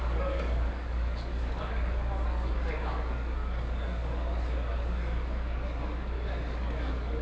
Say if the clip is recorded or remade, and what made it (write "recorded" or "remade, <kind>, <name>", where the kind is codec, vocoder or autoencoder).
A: remade, codec, DAC